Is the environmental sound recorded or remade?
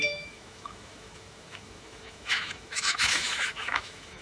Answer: remade